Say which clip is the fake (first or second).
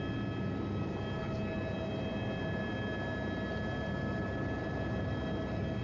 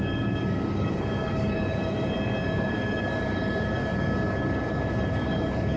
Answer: second